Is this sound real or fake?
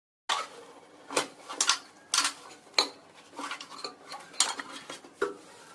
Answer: real